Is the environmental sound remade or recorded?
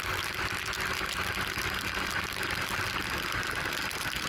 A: recorded